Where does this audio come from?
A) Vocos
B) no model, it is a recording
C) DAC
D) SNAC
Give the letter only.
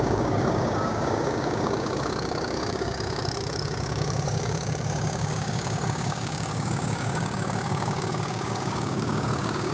C